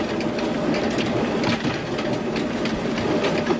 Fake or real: real